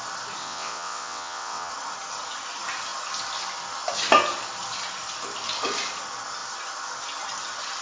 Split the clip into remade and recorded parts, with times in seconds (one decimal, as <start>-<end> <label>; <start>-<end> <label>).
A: 0.0-0.4 recorded; 0.4-1.7 remade; 1.7-7.8 recorded